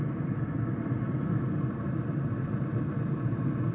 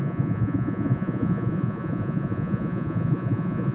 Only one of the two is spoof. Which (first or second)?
second